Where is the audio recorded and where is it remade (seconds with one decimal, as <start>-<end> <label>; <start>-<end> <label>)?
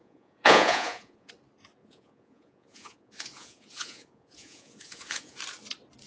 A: 0.0-1.3 remade; 1.3-1.8 recorded; 1.8-5.4 remade; 5.4-6.1 recorded